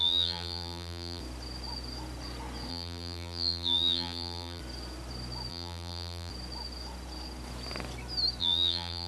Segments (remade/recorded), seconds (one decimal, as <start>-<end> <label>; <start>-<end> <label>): 0.0-1.2 remade; 1.2-2.7 recorded; 2.7-4.6 remade; 4.6-5.5 recorded; 5.5-6.3 remade; 6.3-8.4 recorded; 8.4-9.1 remade